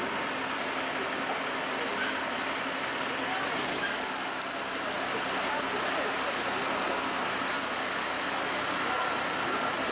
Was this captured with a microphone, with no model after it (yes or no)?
yes